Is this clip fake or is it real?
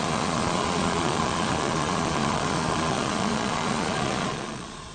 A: fake